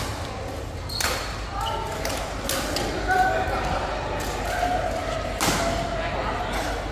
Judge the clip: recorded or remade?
recorded